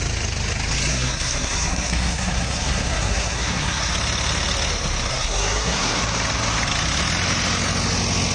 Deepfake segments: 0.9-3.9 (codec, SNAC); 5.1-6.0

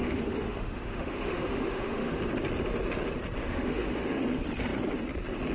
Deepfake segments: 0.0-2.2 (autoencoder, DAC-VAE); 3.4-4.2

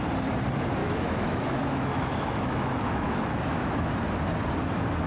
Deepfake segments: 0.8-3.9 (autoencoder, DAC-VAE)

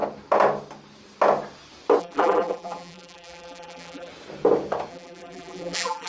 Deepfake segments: 2.0-4.1 (vocoder, BigVGAN v2); 4.9-6.1